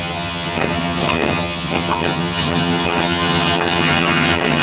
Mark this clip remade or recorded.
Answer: remade